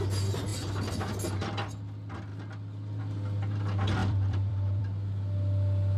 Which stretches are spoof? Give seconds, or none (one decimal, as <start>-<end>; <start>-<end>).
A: 4.0-4.8